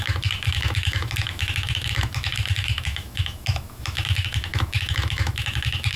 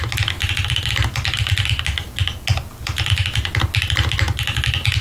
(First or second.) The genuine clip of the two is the second